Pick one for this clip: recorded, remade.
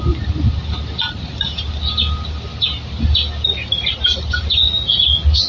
recorded